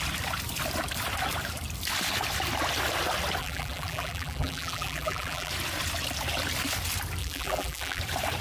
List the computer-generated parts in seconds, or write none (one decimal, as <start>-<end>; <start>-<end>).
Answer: 3.4-5.5; 7.2-8.0